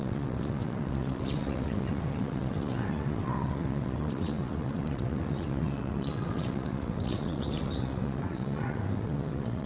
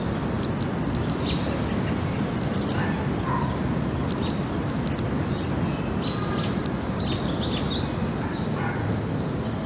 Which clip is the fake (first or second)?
first